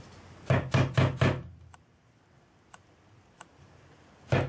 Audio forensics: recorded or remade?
recorded